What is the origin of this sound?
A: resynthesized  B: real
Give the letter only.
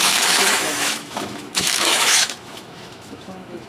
A